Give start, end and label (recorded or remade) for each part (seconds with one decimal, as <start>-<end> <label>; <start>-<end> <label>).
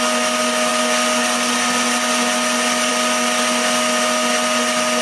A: 0.0-5.0 recorded